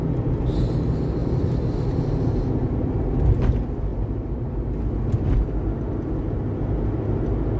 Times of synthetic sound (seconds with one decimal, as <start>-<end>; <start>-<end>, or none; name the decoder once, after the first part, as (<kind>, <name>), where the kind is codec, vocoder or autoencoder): 1.2-3.3 (vocoder, BigVGAN v2); 3.9-4.5